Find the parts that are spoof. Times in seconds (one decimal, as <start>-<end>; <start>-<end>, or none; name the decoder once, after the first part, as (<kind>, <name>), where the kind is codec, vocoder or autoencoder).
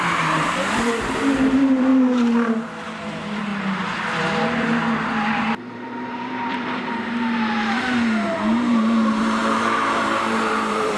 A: 0.0-3.5 (vocoder, BigVGAN v2); 4.2-11.0